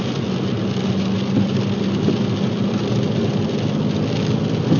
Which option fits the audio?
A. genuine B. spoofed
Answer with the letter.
A